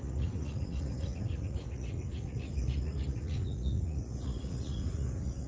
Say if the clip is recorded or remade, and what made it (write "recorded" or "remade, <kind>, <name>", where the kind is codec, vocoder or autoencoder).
remade, vocoder, Vocos